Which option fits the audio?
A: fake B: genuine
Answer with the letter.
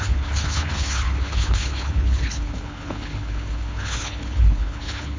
A